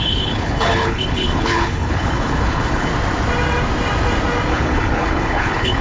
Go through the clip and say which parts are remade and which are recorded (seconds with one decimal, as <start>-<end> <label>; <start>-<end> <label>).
0.0-2.9 remade; 2.9-4.5 recorded; 4.5-5.8 remade